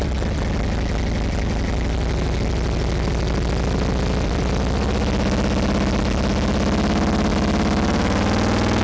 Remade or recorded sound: recorded